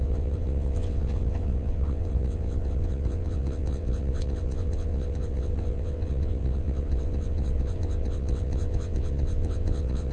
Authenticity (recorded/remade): remade